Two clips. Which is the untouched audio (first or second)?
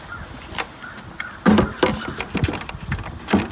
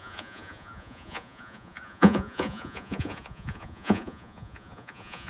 first